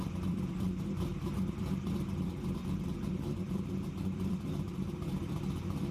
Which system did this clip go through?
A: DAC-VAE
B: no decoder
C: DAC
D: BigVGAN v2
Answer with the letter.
D